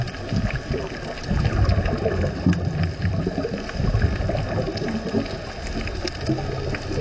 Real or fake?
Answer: fake